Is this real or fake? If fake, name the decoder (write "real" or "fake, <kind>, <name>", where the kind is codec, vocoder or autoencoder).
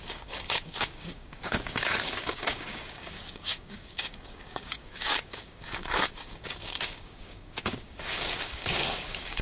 fake, codec, DAC